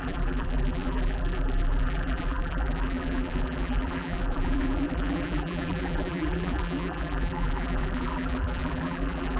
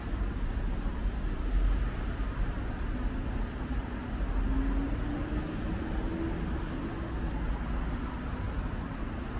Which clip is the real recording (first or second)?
second